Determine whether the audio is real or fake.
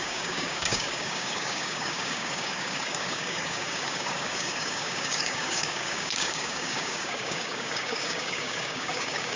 fake